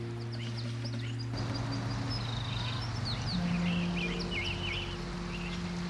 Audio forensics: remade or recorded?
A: recorded